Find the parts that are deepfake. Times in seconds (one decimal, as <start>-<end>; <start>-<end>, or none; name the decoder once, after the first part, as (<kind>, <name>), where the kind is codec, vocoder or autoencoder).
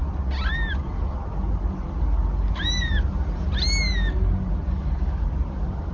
none